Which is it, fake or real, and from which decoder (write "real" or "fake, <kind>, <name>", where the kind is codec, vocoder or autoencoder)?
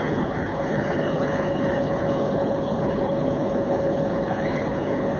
fake, codec, HILCodec